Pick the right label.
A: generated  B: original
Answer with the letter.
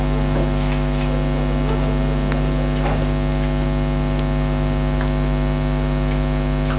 B